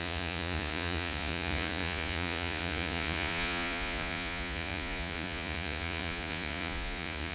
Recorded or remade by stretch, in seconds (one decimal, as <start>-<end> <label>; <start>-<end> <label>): 0.0-7.3 remade